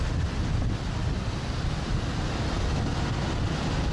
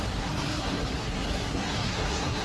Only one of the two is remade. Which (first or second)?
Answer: second